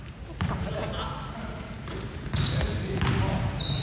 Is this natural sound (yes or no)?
yes